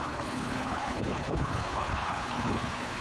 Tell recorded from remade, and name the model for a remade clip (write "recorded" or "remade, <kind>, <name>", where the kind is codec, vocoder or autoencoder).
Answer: remade, codec, HILCodec